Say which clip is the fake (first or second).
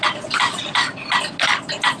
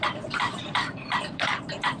second